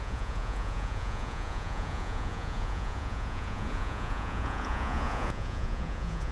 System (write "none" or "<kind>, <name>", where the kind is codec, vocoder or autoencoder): vocoder, Vocos